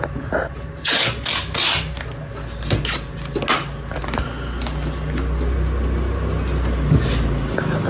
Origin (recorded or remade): recorded